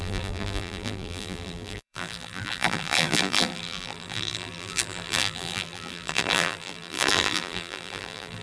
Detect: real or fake fake